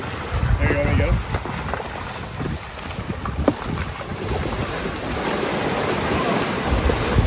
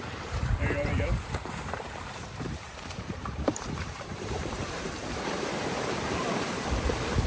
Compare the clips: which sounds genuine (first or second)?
first